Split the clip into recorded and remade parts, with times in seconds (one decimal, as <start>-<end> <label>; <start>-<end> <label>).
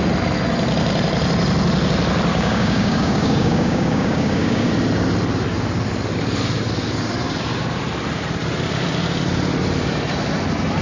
0.0-2.3 recorded; 2.3-4.7 remade; 4.7-10.8 recorded